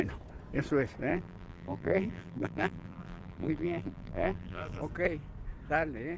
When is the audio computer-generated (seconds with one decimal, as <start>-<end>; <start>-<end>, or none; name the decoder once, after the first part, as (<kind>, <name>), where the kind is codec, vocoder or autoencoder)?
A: 1.1-4.8 (vocoder, BigVGAN v2)